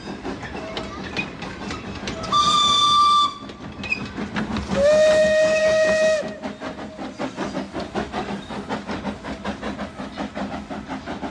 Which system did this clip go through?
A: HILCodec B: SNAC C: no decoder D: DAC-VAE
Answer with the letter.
C